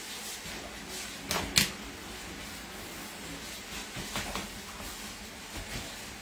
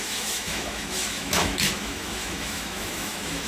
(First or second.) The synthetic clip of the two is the second